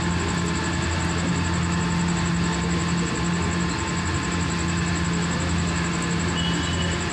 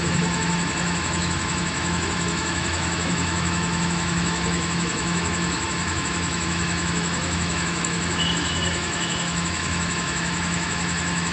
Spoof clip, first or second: second